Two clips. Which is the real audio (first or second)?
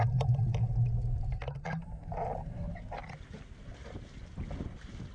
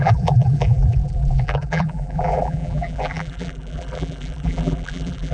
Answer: first